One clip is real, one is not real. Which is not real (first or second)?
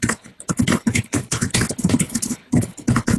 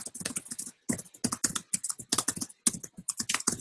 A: first